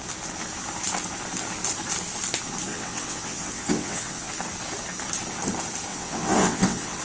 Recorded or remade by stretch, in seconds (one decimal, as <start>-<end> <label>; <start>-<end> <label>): 0.0-2.7 recorded; 2.7-4.3 remade; 4.3-5.9 recorded; 5.9-7.0 remade